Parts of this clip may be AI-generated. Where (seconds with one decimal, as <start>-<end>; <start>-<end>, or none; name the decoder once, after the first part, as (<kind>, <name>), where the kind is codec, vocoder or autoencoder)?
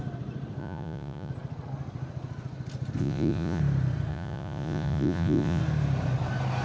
0.6-1.3 (vocoder, Vocos); 3.0-3.6; 4.1-5.6